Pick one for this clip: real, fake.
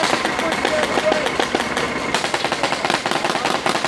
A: real